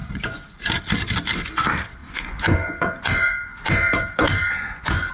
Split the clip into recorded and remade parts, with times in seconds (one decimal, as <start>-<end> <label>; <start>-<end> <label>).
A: 0.0-0.6 remade; 0.6-2.0 recorded; 2.0-5.1 remade